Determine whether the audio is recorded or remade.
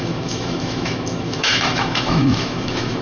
remade